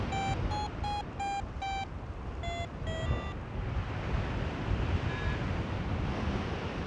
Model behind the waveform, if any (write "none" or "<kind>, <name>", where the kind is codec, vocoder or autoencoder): none